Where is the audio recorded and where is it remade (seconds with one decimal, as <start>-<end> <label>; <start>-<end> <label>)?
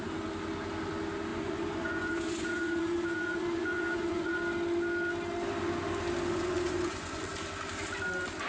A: 0.0-1.3 recorded; 1.3-4.4 remade; 4.4-6.3 recorded; 6.3-7.3 remade; 7.3-8.5 recorded